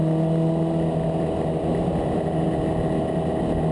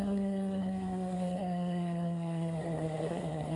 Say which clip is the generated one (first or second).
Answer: second